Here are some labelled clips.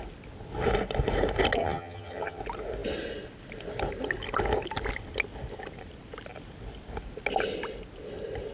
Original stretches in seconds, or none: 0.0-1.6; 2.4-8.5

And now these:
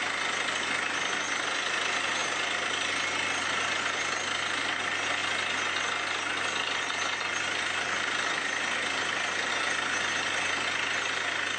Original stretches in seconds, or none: 0.0-11.6

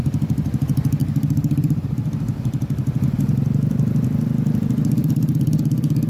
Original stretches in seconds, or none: 0.0-1.0; 2.2-6.1

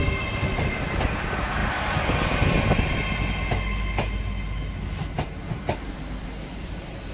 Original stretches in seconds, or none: 0.0-7.1

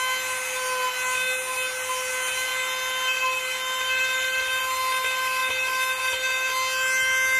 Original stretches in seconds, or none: 0.0-7.4

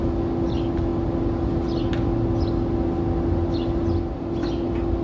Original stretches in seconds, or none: 0.0-5.0

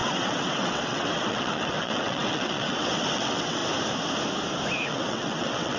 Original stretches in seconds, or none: 3.6-4.9